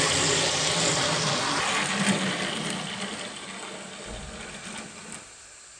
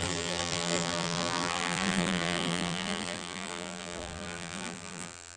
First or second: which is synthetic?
second